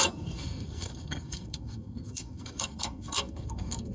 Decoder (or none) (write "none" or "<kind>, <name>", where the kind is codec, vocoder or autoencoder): codec, SNAC